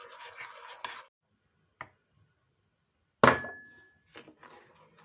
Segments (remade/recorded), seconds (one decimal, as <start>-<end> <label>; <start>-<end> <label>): 0.0-5.0 recorded